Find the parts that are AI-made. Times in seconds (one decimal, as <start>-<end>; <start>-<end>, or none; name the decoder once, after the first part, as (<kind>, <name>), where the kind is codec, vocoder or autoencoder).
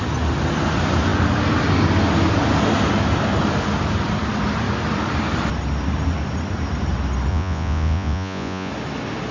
7.3-8.7 (vocoder, Vocos)